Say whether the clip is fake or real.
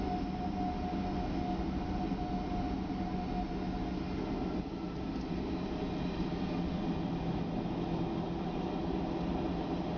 real